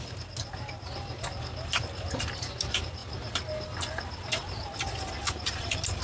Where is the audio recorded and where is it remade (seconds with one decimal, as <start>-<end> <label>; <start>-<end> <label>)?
0.0-6.0 recorded